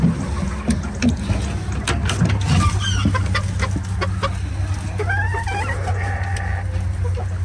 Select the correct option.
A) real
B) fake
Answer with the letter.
A